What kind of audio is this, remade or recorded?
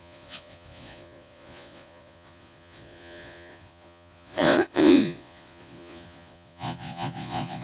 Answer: remade